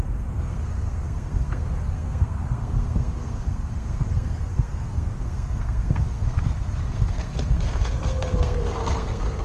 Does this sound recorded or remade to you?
remade